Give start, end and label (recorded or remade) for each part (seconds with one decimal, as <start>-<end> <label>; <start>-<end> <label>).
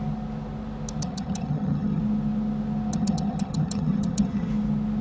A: 0.0-1.0 recorded; 1.0-2.0 remade; 2.0-2.9 recorded; 2.9-4.5 remade; 4.5-5.0 recorded